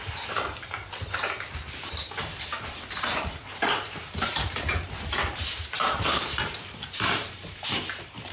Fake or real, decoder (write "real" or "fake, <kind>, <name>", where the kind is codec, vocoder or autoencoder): fake, vocoder, BigVGAN v2